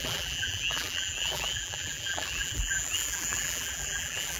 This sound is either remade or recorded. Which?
remade